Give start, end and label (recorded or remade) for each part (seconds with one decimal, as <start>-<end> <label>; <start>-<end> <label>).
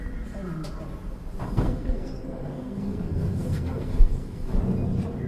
0.0-1.4 recorded; 1.4-4.6 remade; 4.6-5.3 recorded